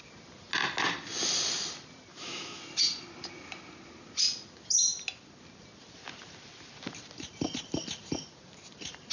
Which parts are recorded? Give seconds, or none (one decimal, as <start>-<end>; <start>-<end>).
0.0-2.1; 2.6-9.1